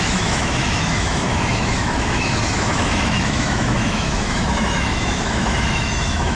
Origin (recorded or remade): remade